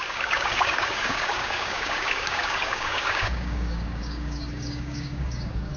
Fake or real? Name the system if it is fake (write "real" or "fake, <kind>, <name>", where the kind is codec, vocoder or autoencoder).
fake, codec, DAC